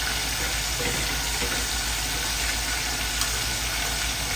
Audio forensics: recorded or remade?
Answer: recorded